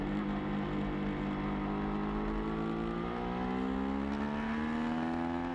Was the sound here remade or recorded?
recorded